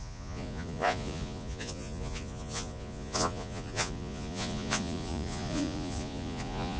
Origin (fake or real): fake